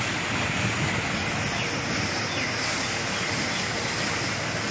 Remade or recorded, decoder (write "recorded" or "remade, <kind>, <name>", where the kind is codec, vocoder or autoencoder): recorded